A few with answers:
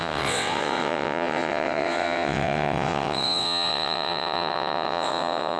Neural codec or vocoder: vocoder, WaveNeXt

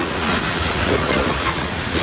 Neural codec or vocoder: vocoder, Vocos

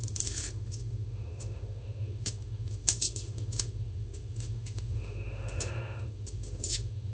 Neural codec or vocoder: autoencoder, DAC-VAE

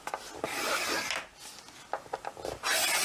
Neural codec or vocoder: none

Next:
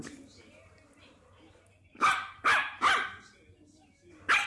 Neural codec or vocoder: none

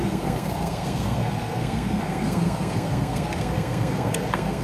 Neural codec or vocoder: codec, SNAC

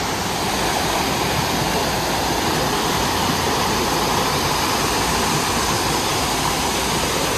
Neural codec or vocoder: none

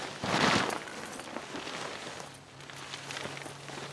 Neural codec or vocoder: none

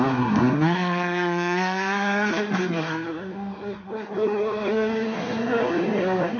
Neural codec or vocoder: codec, SNAC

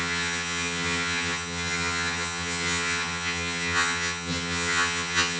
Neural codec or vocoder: vocoder, HiFi-GAN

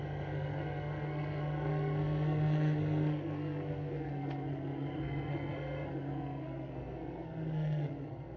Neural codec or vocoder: codec, SNAC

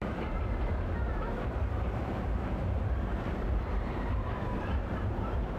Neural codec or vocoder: vocoder, BigVGAN v2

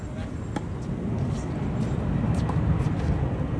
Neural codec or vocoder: none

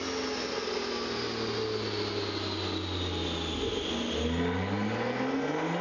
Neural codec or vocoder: none